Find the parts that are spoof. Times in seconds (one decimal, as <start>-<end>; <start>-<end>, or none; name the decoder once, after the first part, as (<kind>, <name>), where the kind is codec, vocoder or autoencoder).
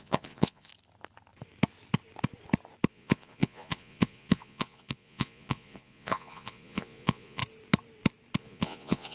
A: 0.0-0.7 (vocoder, Vocos); 2.9-7.4; 8.4-9.1